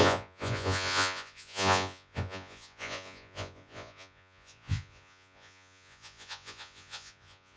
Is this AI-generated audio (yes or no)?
yes